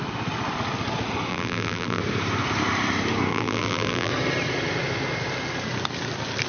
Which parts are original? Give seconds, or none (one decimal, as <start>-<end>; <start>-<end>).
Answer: 0.0-1.3; 2.0-3.3; 4.1-6.5